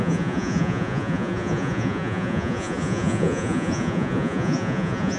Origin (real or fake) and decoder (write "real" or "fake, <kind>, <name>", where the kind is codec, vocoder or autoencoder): fake, vocoder, Vocos